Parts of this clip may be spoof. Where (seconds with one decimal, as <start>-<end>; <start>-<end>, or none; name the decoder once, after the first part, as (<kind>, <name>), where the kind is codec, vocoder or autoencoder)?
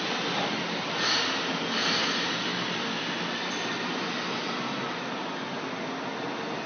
none